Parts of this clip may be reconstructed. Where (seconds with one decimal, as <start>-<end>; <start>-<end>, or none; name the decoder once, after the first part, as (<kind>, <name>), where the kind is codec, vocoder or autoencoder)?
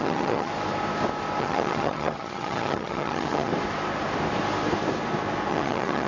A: 0.0-0.5 (vocoder, HiFi-GAN); 1.4-3.5; 5.5-6.1